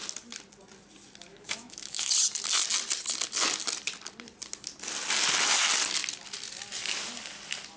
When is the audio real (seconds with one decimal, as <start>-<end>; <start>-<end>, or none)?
0.0-1.3; 2.1-7.8